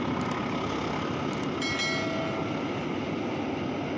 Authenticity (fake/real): real